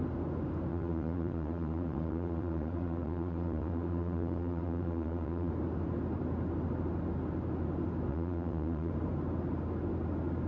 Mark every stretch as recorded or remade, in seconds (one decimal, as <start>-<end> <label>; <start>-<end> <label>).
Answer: 0.0-0.7 recorded; 0.7-5.5 remade; 5.5-8.1 recorded; 8.1-8.9 remade; 8.9-10.5 recorded